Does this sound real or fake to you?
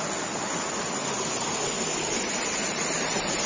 real